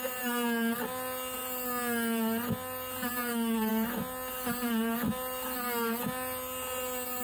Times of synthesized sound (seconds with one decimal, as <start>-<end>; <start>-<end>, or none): 3.1-3.7